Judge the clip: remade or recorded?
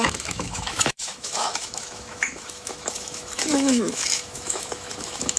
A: remade